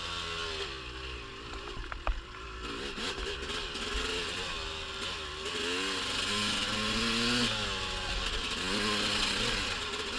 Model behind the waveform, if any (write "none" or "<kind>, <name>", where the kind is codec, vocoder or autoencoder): none